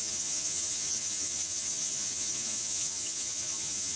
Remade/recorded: remade